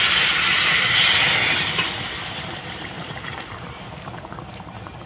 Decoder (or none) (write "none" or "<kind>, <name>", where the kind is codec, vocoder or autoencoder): vocoder, BigVGAN v2